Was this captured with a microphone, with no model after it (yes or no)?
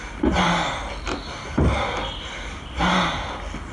yes